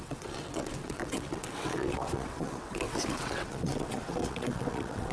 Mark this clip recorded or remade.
remade